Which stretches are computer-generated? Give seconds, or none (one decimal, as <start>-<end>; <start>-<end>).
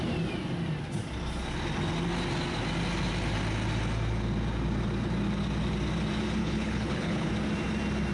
6.4-7.3